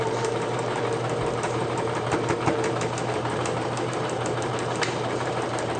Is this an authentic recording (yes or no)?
no